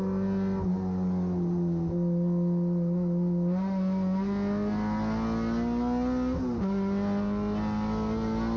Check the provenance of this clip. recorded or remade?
recorded